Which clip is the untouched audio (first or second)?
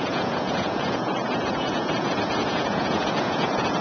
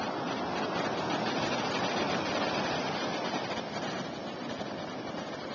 second